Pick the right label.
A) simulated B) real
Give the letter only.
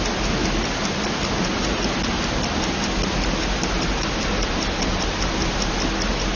B